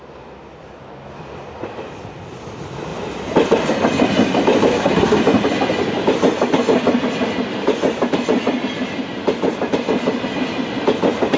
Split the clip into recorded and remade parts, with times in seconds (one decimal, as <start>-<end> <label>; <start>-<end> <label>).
0.0-4.7 recorded; 4.7-5.2 remade; 5.2-11.4 recorded